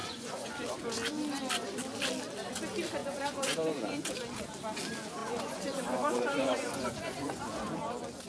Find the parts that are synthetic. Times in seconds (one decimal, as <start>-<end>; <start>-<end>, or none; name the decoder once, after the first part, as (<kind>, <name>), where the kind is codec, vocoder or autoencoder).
0.0-0.5 (vocoder, Vocos); 3.0-4.1; 5.2-7.8